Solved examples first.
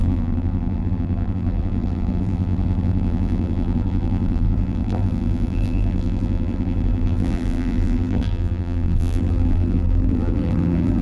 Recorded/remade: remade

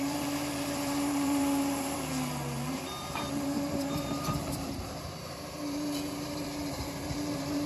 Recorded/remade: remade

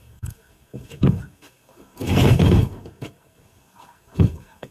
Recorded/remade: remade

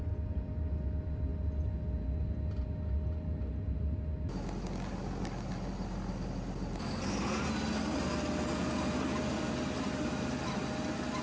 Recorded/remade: recorded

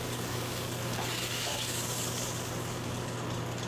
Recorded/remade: remade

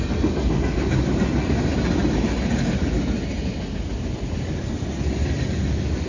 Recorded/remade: recorded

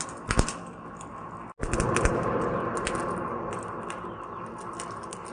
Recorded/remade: recorded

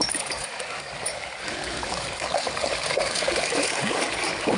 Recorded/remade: remade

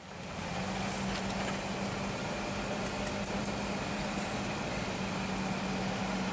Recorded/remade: recorded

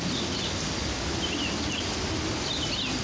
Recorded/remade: recorded